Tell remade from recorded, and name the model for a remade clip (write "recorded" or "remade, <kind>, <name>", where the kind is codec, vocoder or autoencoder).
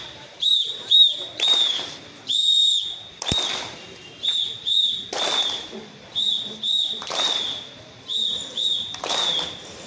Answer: remade, vocoder, BigVGAN v2